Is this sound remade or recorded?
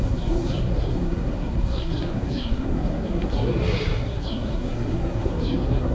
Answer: remade